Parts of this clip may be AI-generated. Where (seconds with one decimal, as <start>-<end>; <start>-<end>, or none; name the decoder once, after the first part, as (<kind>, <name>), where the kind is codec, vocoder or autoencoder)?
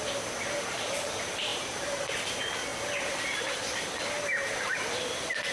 1.5-2.2 (vocoder, BigVGAN v2)